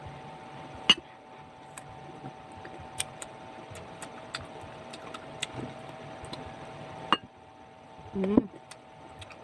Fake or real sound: real